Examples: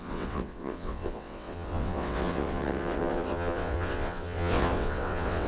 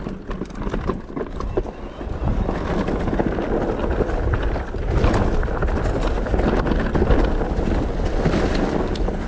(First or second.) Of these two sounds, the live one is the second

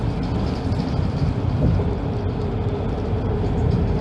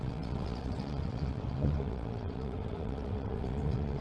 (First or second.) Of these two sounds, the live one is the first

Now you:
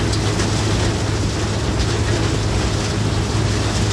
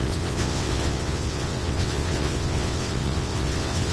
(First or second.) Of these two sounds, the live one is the first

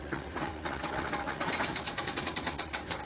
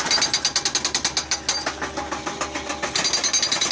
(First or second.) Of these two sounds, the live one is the second